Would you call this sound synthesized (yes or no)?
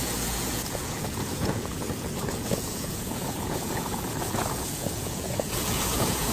yes